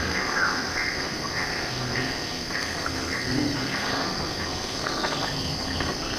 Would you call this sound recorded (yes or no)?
no